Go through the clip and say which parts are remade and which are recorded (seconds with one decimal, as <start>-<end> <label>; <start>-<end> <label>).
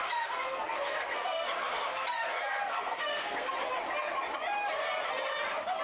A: 0.0-3.5 remade; 3.5-5.8 recorded